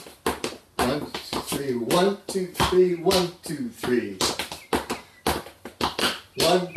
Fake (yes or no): no